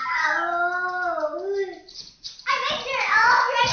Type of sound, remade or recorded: recorded